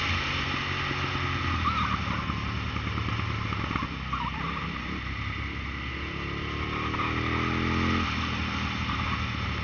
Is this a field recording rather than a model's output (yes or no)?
yes